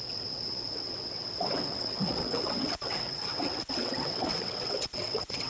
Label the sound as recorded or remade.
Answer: remade